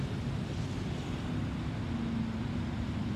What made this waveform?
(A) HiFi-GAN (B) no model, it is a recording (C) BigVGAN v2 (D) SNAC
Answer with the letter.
B